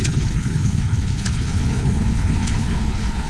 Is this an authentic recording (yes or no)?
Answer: no